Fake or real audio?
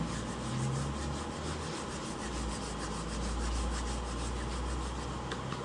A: real